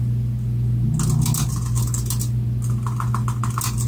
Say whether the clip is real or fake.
real